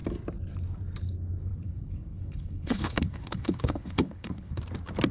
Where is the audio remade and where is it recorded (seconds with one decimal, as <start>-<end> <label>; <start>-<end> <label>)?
0.0-1.5 recorded; 1.5-4.6 remade; 4.6-5.1 recorded